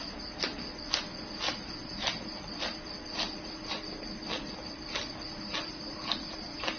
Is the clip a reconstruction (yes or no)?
no